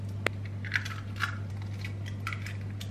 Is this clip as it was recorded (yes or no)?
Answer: yes